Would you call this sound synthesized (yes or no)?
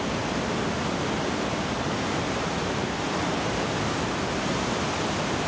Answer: no